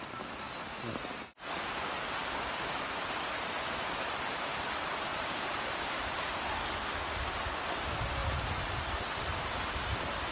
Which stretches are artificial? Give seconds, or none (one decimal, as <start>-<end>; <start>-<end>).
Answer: 5.1-6.2; 8.2-8.9

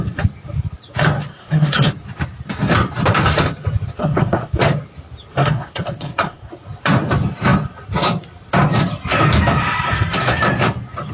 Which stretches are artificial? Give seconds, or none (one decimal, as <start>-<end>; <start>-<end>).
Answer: 1.3-1.9; 4.0-4.5; 5.4-6.5